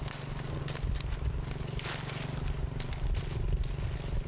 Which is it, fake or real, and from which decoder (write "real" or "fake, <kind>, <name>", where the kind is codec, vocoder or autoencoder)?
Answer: real